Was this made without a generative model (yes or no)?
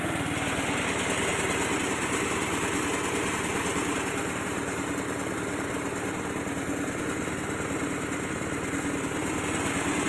yes